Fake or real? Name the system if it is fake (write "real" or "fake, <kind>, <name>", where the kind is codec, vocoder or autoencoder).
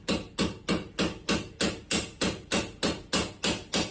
real